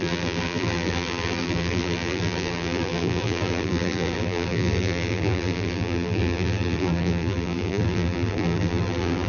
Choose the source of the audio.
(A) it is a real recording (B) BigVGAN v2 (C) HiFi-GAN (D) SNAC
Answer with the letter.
B